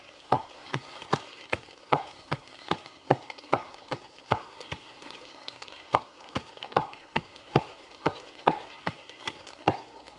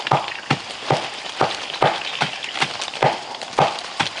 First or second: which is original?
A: second